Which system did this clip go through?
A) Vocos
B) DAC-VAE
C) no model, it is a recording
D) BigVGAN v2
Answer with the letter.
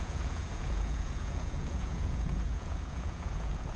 A